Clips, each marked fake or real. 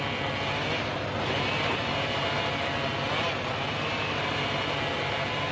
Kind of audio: real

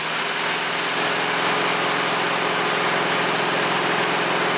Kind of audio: real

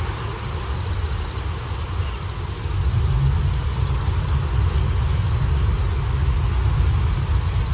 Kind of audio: real